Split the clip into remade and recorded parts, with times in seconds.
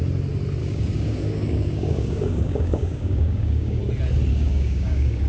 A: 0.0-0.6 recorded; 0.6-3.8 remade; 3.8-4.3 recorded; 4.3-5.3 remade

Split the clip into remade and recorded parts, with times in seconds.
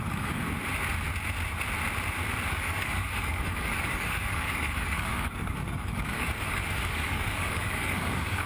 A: 0.0-0.4 remade; 0.4-2.5 recorded; 2.5-8.5 remade